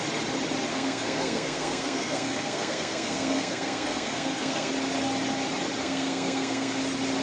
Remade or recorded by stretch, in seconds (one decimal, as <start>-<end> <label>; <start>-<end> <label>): 0.0-0.7 recorded; 0.7-4.7 remade; 4.7-5.8 recorded; 5.8-6.8 remade; 6.8-7.2 recorded